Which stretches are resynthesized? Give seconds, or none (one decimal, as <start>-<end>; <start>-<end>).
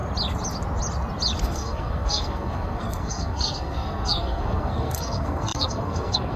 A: 1.4-6.4